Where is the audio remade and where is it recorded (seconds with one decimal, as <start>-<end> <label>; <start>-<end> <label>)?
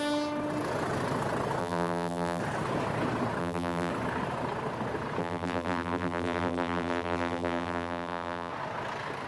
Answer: 0.0-1.6 recorded; 1.6-2.4 remade; 2.4-3.4 recorded; 3.4-3.9 remade; 3.9-5.2 recorded; 5.2-8.5 remade; 8.5-9.3 recorded